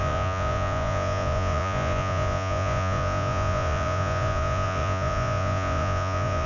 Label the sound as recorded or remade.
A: remade